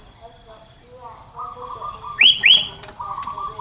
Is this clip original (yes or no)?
yes